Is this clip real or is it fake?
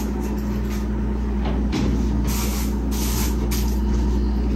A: real